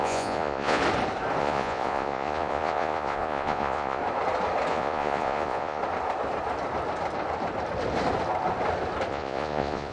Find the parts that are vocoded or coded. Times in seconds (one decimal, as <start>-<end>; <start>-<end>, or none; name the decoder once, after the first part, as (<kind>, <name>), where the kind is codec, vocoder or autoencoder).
0.0-0.8 (vocoder, Vocos); 1.4-4.0; 4.7-5.8; 9.1-9.9